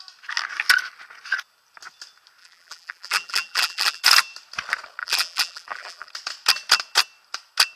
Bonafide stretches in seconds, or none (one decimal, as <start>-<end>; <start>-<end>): 0.0-2.4; 4.0-5.0; 6.1-7.8